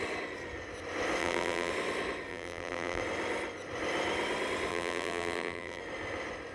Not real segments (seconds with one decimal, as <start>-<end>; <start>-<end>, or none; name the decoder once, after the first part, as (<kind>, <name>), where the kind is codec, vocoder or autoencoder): 1.2-1.7 (vocoder, BigVGAN v2); 2.3-3.0; 4.7-5.8